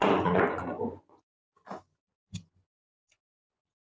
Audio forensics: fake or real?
fake